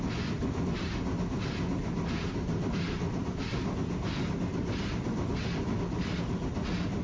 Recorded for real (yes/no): yes